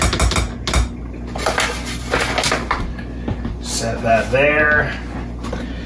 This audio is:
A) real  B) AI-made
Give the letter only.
A